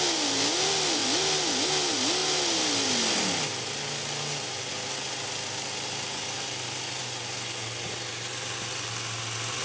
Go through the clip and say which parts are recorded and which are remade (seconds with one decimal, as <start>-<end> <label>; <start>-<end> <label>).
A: 0.0-9.6 recorded